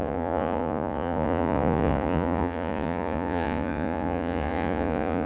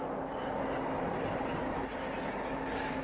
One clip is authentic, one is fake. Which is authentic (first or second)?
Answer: second